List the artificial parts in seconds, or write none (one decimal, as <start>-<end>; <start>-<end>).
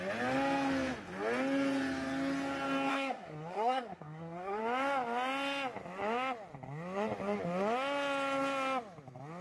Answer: 2.9-4.6